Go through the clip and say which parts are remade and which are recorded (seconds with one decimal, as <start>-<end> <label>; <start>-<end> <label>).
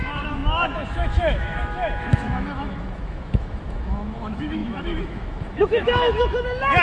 0.0-6.8 remade